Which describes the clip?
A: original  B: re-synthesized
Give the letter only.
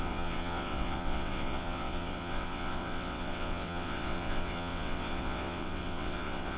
B